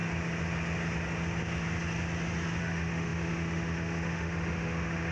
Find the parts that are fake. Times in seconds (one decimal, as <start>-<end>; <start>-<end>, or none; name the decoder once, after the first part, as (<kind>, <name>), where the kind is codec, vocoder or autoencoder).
2.6-5.1 (autoencoder, DAC-VAE)